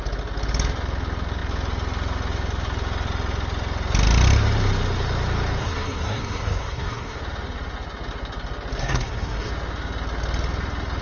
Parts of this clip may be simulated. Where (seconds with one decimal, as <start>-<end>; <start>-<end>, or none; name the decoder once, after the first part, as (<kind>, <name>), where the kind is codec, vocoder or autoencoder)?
5.6-7.2 (codec, SNAC); 8.8-9.5